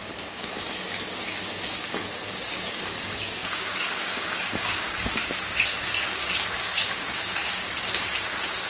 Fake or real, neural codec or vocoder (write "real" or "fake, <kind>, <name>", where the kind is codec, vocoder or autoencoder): fake, codec, DAC